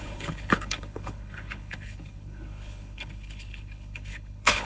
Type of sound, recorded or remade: remade